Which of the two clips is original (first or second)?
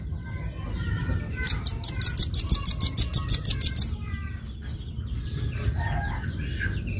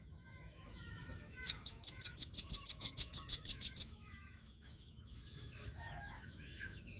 first